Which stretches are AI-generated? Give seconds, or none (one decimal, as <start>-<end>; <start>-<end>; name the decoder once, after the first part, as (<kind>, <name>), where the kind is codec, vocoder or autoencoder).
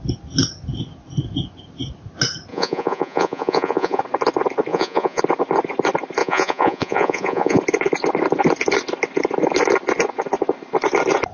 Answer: 2.5-4.0 (vocoder, Vocos); 4.7-5.2; 6.2-7.6